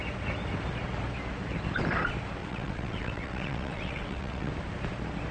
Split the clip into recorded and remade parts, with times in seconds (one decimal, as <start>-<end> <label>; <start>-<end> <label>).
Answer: 0.0-2.4 recorded; 2.4-4.5 remade; 4.5-5.3 recorded